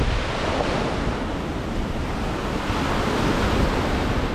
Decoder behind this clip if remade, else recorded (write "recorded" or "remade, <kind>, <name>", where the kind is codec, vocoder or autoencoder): recorded